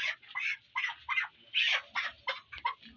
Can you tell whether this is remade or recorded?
recorded